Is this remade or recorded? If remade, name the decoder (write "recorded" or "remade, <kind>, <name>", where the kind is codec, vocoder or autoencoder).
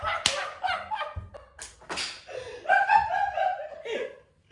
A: recorded